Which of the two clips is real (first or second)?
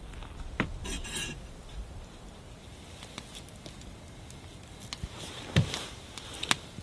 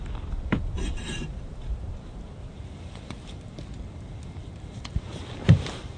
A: first